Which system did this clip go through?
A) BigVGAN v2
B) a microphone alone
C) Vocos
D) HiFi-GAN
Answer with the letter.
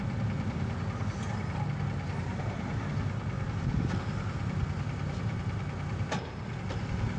B